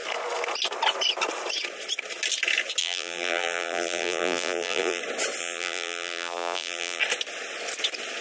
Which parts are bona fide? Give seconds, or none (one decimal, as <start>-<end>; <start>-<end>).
0.0-2.8; 5.0-5.4; 7.0-8.2

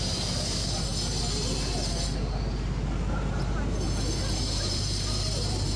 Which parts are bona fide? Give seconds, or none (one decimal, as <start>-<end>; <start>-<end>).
0.9-4.4